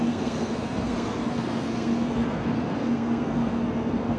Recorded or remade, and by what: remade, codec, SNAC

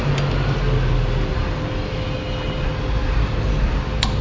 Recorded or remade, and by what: recorded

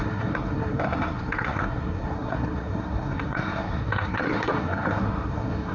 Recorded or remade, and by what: remade, codec, SNAC